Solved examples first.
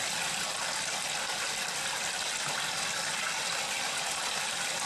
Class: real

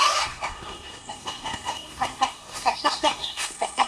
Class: fake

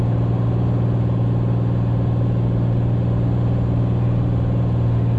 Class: real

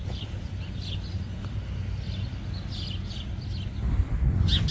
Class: real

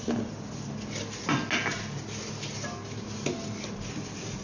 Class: real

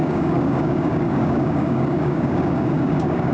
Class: fake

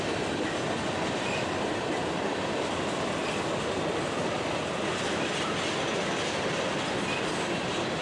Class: real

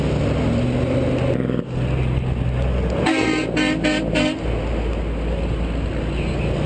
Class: real